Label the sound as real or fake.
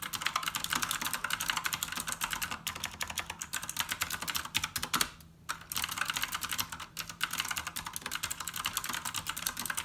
real